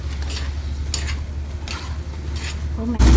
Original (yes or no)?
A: yes